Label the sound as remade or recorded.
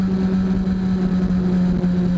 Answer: recorded